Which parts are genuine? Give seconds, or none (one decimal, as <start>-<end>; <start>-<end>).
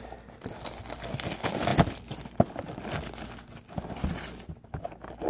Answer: 0.0-5.3